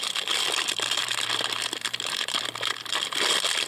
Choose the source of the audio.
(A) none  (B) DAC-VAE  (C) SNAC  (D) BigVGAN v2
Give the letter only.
D